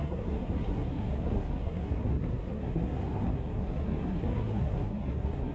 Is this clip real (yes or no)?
no